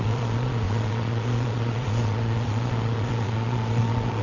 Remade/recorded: remade